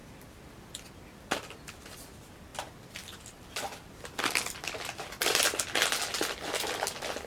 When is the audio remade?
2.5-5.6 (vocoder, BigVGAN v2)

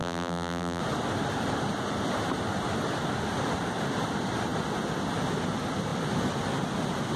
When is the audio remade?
0.0-0.8 (vocoder, BigVGAN v2)

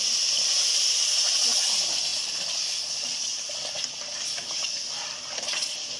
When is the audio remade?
none

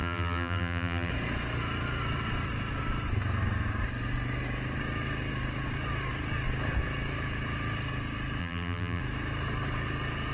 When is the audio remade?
0.0-1.1 (vocoder, BigVGAN v2); 8.4-9.0

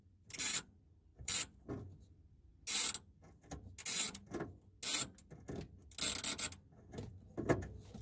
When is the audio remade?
1.1-1.7 (vocoder, BigVGAN v2)

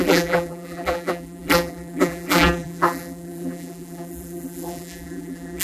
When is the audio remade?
0.0-5.6 (vocoder, BigVGAN v2)